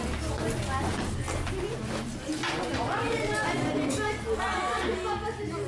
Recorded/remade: recorded